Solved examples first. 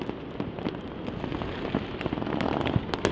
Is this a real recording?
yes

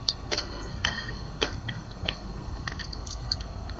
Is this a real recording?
no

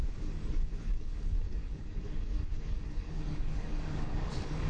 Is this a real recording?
no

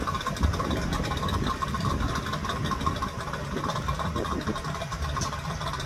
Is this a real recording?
yes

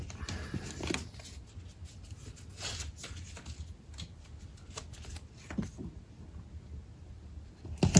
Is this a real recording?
yes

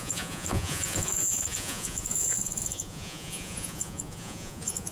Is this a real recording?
no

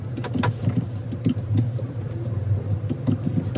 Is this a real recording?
yes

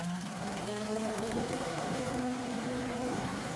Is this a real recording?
no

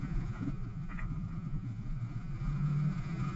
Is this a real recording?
no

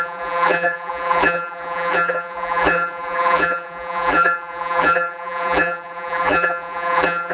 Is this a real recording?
no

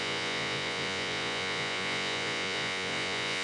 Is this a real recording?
no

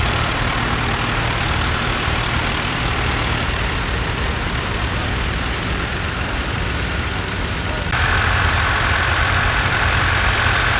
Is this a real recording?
no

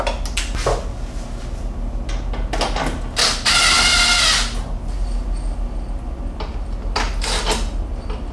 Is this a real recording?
yes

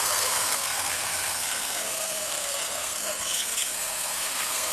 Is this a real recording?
no